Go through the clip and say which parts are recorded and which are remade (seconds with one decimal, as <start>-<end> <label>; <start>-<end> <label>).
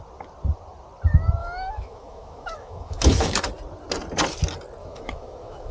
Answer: 0.0-1.4 recorded; 1.4-3.5 remade; 3.5-4.8 recorded; 4.8-5.7 remade